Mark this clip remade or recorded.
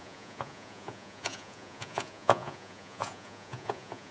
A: remade